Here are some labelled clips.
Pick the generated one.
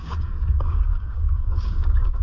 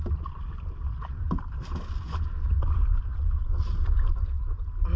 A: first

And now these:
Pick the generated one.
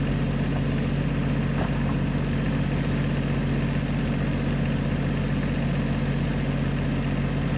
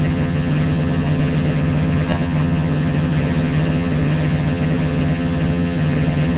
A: second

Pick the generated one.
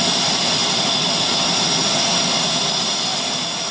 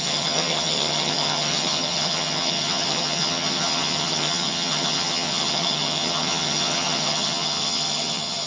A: second